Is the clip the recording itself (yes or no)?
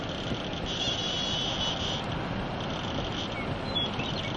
yes